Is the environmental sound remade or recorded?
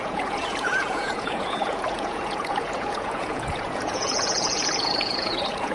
remade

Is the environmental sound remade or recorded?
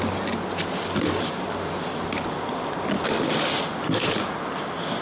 recorded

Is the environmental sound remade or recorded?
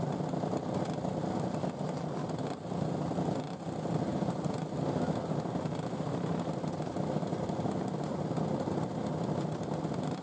recorded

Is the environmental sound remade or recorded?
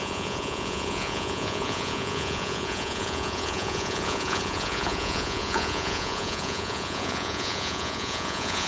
remade